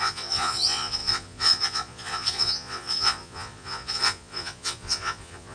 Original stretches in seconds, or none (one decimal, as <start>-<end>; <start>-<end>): none